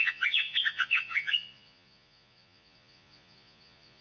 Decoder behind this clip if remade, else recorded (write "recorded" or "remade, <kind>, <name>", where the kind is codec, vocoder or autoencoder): remade, vocoder, Vocos